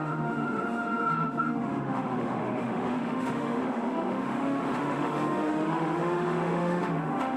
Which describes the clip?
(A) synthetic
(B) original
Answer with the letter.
A